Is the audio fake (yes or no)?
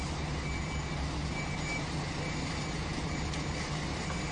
no